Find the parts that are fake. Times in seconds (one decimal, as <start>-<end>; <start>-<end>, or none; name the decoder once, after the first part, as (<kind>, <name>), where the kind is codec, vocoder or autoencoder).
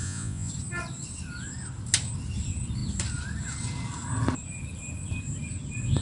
0.0-0.5 (vocoder, Vocos)